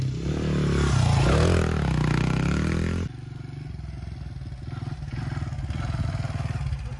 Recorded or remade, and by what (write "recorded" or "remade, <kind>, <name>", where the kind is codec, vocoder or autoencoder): recorded